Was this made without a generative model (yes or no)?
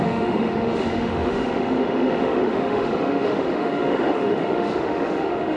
no